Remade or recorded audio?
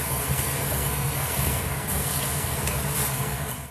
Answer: remade